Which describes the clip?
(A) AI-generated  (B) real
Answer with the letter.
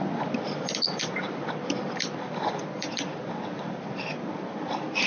A